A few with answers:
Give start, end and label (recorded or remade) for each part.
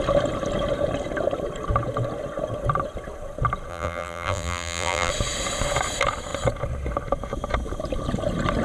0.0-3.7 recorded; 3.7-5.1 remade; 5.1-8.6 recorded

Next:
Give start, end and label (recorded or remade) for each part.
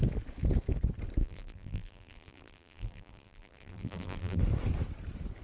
0.0-1.2 recorded; 1.2-4.4 remade; 4.4-5.4 recorded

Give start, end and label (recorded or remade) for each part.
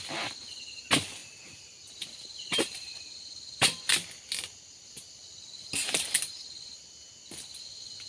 0.0-1.2 recorded; 1.2-2.9 remade; 2.9-8.1 recorded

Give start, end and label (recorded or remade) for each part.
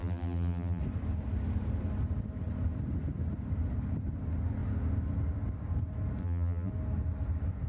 0.0-0.8 remade; 0.8-6.2 recorded; 6.2-6.7 remade; 6.7-7.7 recorded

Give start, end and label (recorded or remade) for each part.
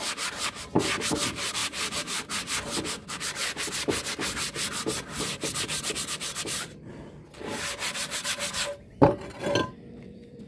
0.0-10.5 remade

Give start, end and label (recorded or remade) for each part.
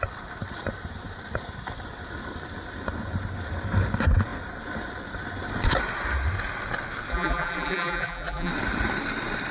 0.0-7.1 recorded; 7.1-8.5 remade; 8.5-9.5 recorded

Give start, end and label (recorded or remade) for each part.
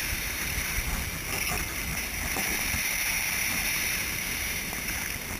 0.0-0.9 remade; 0.9-1.8 recorded; 1.8-5.0 remade; 5.0-5.4 recorded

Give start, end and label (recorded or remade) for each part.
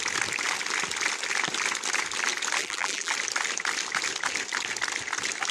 0.0-2.6 recorded; 2.6-3.1 remade; 3.1-5.5 recorded